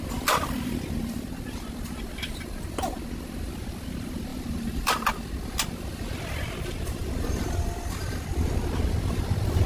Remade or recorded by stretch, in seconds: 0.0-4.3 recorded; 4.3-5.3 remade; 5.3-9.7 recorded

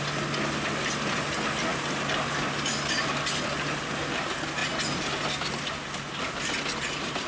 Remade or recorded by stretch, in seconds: 0.0-7.3 recorded